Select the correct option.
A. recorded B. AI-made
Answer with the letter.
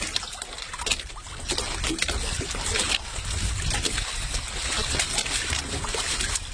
A